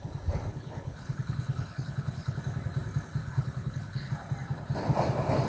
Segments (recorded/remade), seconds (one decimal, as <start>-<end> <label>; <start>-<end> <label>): 0.0-0.5 recorded; 0.5-2.4 remade; 2.4-3.2 recorded; 3.2-4.1 remade; 4.1-5.5 recorded